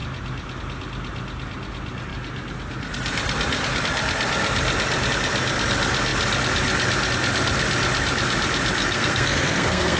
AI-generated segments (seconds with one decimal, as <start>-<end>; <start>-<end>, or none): 8.8-10.0